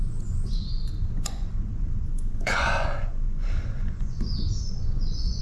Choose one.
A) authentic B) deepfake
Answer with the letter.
B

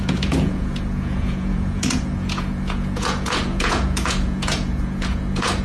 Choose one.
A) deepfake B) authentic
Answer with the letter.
A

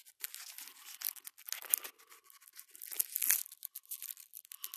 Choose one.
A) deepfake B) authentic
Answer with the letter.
B